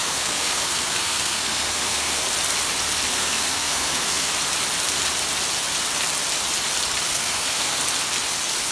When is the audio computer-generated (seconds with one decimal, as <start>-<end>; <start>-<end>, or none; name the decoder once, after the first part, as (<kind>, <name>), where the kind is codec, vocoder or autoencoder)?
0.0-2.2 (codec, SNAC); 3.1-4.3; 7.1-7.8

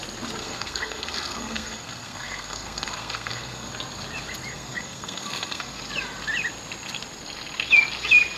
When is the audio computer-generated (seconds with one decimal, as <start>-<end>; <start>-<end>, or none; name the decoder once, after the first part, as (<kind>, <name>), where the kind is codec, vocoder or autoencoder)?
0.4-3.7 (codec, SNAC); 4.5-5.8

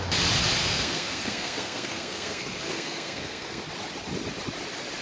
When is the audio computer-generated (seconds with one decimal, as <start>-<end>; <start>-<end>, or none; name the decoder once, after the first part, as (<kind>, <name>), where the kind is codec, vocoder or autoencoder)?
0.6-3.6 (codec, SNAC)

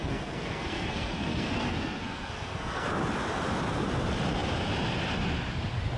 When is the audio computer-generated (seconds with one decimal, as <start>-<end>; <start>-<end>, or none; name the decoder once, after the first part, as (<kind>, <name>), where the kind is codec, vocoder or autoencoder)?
0.0-2.9 (codec, SNAC)

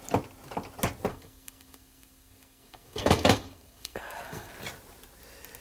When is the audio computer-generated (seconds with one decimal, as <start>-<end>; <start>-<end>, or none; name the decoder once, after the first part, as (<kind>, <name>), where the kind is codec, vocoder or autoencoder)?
1.1-4.5 (codec, SNAC)

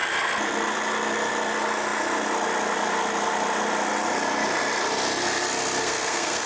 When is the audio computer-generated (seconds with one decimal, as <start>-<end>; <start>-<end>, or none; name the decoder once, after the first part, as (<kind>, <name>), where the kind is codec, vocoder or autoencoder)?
5.8-6.5 (codec, SNAC)

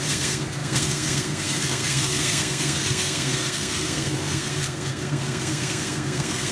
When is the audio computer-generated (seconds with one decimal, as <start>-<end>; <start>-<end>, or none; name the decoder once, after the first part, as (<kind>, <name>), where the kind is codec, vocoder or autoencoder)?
0.0-6.5 (codec, SNAC)

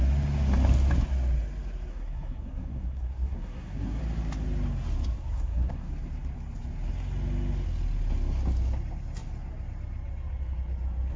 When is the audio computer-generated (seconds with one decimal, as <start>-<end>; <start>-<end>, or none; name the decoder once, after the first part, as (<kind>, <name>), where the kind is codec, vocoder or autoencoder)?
1.9-4.0 (codec, SNAC); 5.2-5.9